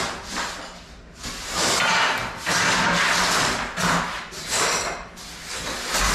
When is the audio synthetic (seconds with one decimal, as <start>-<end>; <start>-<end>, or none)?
none